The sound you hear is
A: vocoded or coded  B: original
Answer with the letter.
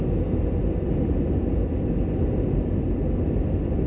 B